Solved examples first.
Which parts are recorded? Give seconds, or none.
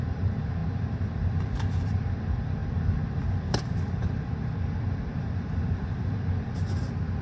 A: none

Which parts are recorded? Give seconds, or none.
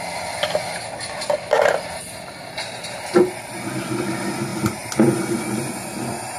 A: 0.0-6.4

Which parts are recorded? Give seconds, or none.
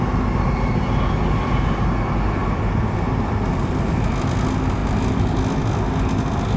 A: 0.0-4.8; 5.6-6.6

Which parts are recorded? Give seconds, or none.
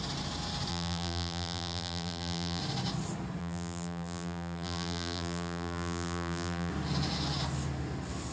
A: 0.0-0.7; 2.6-3.4; 6.7-8.3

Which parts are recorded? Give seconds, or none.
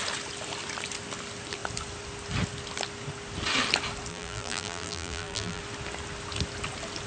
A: 0.0-4.1; 5.6-7.1